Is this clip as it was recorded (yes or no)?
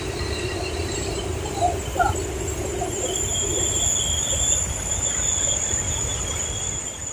yes